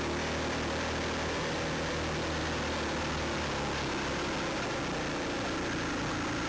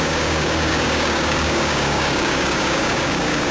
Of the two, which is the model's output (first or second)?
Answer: second